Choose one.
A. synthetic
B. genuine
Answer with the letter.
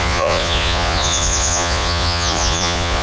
A